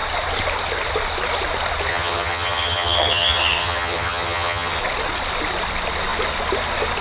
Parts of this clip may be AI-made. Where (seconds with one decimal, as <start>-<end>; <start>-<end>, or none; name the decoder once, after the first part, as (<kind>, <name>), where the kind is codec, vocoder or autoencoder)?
1.9-4.8 (vocoder, HiFi-GAN)